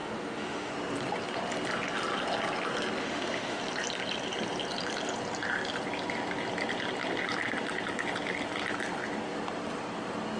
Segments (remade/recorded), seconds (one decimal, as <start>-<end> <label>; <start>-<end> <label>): 0.0-0.7 remade; 0.7-3.0 recorded; 3.0-3.6 remade; 3.6-10.4 recorded